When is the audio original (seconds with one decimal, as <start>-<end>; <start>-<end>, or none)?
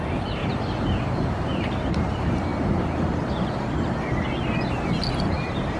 0.4-1.0; 2.5-5.2